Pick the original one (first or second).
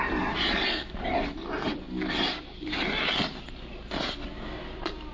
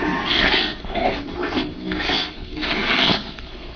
first